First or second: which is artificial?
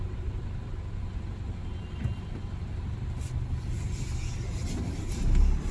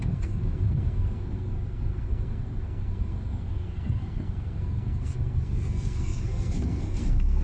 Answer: second